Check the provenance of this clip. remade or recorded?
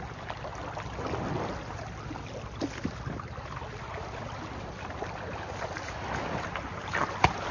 recorded